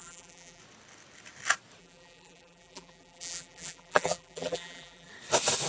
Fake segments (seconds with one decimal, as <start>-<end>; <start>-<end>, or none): 0.0-0.6; 1.8-5.1